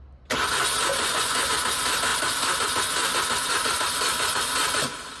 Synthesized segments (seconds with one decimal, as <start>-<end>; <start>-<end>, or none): 0.9-1.5